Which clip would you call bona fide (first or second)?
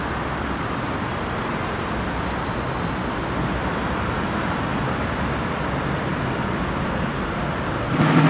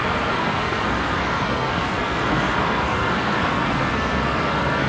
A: first